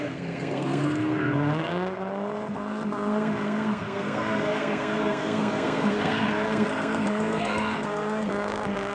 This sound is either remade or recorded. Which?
remade